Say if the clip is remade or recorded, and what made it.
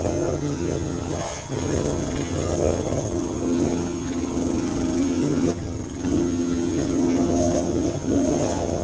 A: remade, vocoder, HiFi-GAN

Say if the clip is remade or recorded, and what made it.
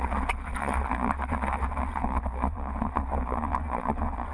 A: remade, vocoder, Vocos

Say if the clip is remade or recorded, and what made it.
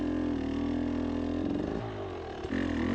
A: recorded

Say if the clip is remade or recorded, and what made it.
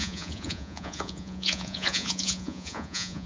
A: remade, vocoder, Vocos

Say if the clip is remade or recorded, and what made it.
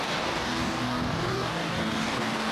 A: remade, codec, DAC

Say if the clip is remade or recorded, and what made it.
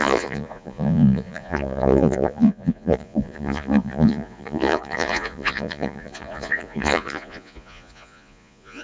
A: remade, vocoder, Vocos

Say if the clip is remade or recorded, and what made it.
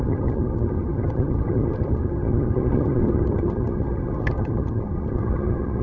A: remade, vocoder, HiFi-GAN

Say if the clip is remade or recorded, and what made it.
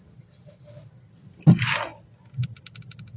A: recorded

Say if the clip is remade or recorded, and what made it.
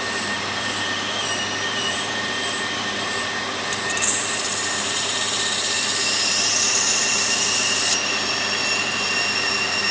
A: remade, vocoder, BigVGAN v2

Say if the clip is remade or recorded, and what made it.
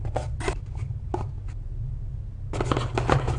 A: recorded